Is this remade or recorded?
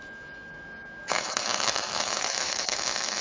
remade